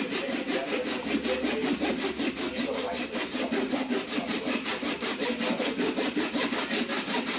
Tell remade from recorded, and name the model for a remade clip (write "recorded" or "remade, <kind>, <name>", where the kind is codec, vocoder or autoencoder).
recorded